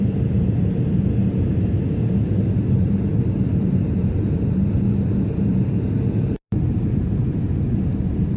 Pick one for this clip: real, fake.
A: fake